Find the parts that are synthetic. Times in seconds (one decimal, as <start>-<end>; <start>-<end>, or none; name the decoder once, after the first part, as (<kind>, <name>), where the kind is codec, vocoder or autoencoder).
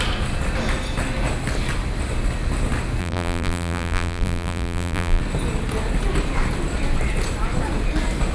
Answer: 3.0-5.2 (vocoder, BigVGAN v2)